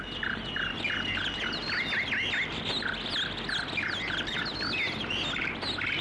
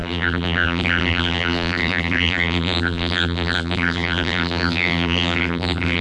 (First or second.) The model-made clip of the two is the second